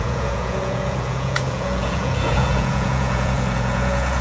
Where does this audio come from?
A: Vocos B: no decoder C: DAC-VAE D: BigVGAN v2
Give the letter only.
A